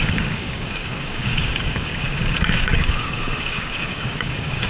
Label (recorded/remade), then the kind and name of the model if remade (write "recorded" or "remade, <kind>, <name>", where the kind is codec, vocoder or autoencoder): remade, codec, DAC